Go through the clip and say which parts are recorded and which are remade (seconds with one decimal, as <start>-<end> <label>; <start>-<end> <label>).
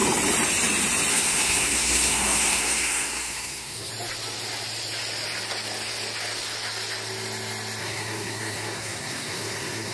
0.0-1.1 recorded; 1.1-3.9 remade; 3.9-7.8 recorded; 7.8-9.9 remade